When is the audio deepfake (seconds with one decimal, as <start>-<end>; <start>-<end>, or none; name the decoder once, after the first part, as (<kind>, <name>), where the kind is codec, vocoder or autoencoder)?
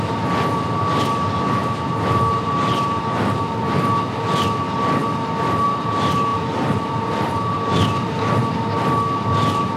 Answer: 6.3-8.3 (vocoder, BigVGAN v2)